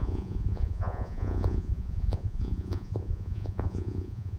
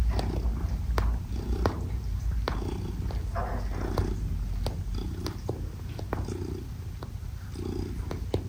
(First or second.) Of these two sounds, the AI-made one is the first